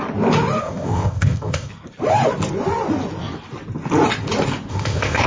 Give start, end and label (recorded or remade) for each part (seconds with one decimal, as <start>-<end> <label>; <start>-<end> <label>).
0.0-0.6 recorded; 0.6-1.7 remade; 1.7-4.7 recorded; 4.7-5.3 remade